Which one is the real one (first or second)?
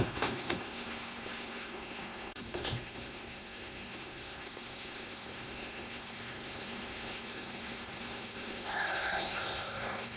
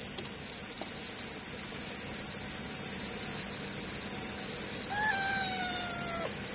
second